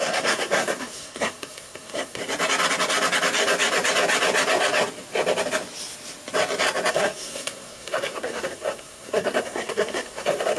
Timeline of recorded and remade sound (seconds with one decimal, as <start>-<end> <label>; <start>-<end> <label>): 0.0-2.2 remade; 2.2-6.9 recorded; 6.9-10.6 remade